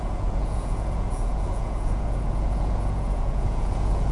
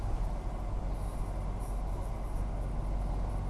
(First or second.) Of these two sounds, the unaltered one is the second